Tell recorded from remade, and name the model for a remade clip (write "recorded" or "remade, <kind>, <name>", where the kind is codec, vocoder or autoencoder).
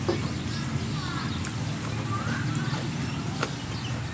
recorded